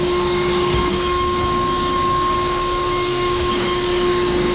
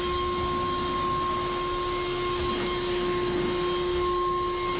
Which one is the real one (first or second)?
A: second